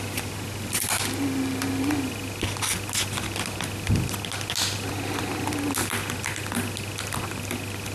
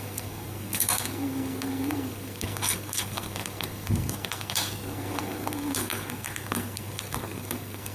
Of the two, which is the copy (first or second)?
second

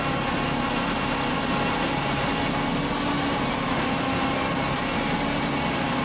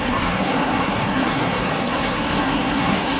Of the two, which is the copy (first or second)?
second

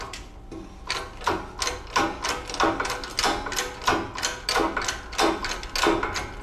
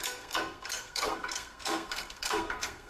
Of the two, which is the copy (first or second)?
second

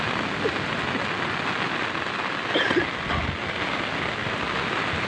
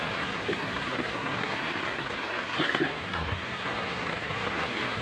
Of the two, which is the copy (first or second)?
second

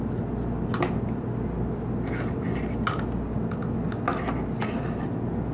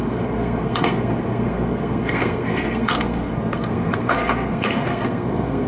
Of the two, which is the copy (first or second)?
second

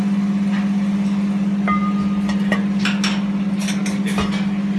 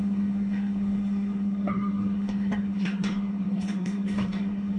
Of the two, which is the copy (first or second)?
second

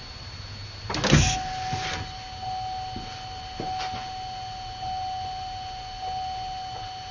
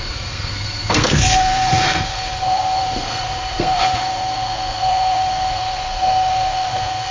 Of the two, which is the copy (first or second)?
second